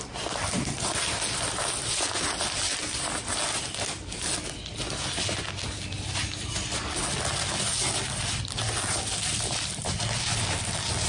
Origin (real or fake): real